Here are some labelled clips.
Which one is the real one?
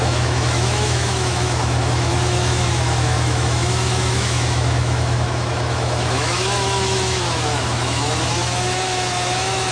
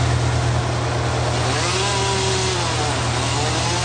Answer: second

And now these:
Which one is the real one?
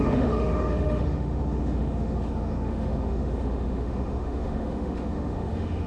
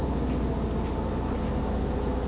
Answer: second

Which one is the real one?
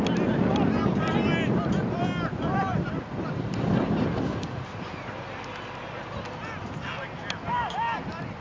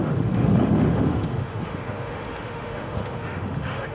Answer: first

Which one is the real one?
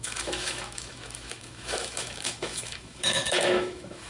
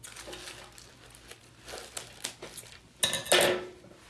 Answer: second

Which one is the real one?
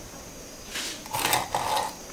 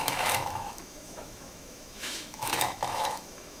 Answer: first